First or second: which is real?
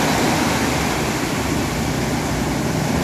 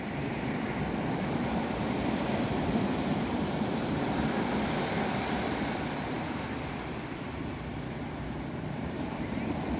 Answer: first